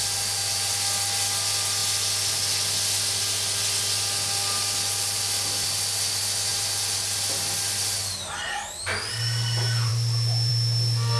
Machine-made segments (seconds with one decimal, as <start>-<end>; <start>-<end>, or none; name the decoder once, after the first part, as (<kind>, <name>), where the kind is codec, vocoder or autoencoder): none